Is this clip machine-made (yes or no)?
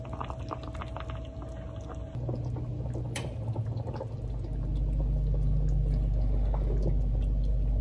no